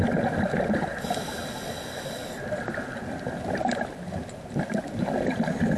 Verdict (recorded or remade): recorded